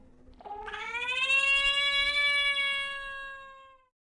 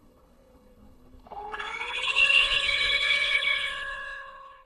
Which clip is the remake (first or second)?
second